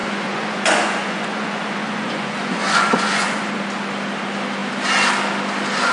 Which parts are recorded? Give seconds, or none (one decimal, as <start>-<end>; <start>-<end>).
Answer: 3.5-5.9